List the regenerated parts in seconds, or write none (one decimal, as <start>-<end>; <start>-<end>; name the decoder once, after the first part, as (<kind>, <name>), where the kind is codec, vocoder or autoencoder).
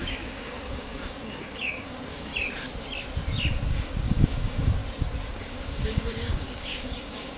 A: 0.0-2.3 (codec, DAC); 4.0-4.8; 5.4-7.4